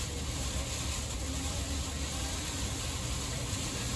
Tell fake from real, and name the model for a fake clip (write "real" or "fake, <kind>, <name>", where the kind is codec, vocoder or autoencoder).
real